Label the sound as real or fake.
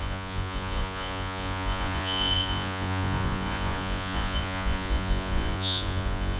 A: fake